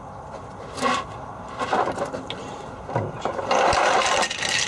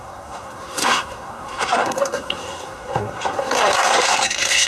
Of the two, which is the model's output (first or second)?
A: second